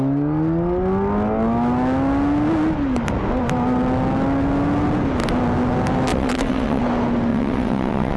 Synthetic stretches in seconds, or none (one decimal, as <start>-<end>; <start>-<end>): 6.1-6.8; 7.3-8.2